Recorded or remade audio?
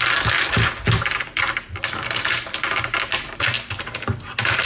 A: recorded